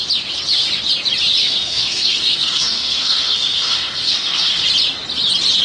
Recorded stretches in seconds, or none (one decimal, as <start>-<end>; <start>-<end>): 0.0-1.4; 4.6-5.6